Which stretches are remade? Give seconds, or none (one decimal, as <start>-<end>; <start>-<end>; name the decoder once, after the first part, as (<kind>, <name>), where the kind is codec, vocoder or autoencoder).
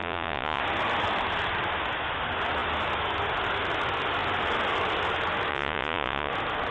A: 0.0-0.6 (vocoder, Vocos); 5.5-6.3